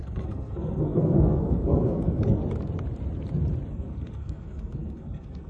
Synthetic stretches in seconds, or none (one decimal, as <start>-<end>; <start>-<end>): 0.0-2.4; 3.7-5.5